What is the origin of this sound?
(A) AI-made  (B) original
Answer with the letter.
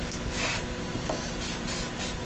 B